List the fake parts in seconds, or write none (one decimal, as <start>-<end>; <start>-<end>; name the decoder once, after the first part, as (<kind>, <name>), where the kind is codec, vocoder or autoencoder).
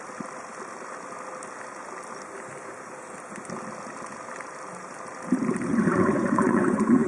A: 5.7-7.1 (vocoder, Vocos)